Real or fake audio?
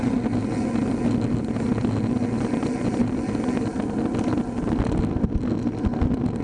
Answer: real